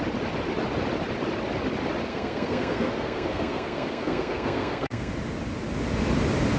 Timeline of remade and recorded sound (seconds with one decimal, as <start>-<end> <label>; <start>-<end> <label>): 0.0-2.1 recorded; 2.1-5.1 remade; 5.1-6.6 recorded